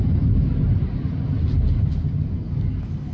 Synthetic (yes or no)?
no